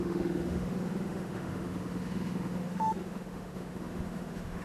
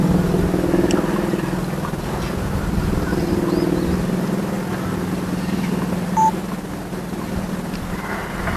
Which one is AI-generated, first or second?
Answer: first